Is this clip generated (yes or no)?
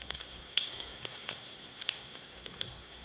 yes